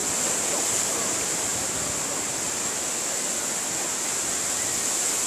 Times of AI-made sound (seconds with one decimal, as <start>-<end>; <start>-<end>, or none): none